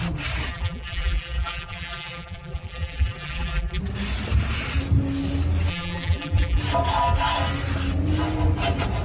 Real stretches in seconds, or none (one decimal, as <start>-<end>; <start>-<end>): 0.0-0.5; 3.8-5.7; 6.6-9.0